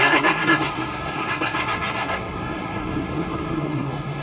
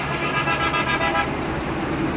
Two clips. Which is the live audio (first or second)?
second